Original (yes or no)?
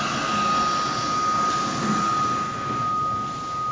yes